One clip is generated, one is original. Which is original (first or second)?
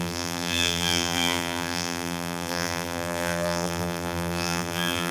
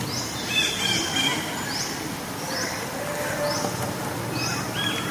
second